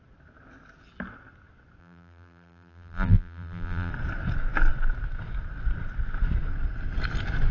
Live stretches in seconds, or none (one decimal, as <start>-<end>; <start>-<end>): 0.0-1.8; 3.9-7.5